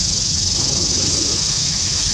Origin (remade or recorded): remade